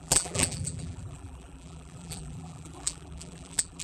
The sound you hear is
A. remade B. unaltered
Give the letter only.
A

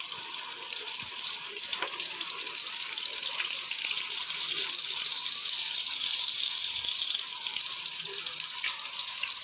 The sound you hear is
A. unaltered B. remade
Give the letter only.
B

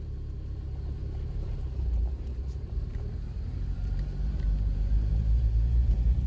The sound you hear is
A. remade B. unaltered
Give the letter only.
A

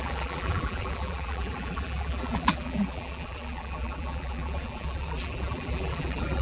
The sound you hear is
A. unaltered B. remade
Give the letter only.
B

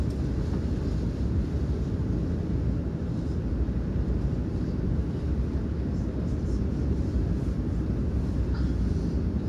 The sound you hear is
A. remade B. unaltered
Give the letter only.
B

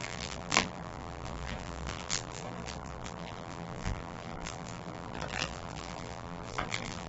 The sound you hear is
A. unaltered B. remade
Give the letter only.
B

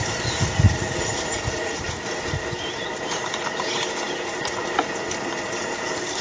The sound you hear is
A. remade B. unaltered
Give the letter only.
A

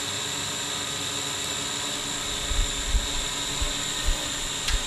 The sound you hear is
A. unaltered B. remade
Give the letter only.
A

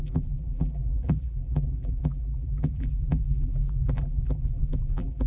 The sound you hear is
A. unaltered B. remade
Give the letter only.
B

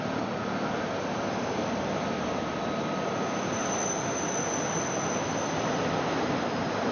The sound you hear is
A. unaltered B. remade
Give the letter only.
A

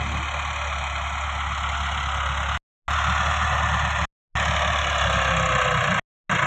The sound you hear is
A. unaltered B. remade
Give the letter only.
A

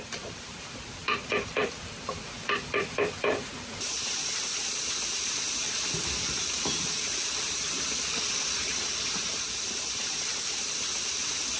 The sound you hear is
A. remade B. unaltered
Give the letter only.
A